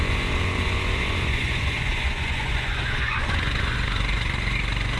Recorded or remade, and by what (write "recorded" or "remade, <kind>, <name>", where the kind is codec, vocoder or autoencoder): remade, vocoder, Vocos